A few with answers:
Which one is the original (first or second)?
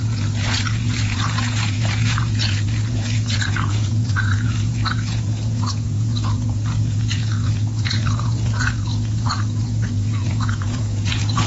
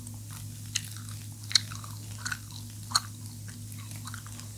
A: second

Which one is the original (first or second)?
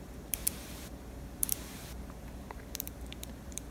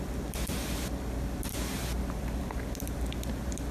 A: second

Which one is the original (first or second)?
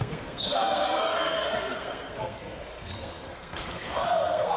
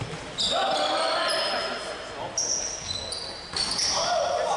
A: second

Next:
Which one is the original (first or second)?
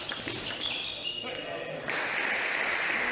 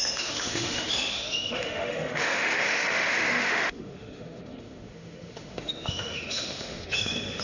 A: first